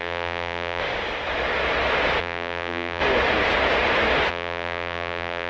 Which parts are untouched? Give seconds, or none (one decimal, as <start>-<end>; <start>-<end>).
0.8-2.2; 3.0-4.3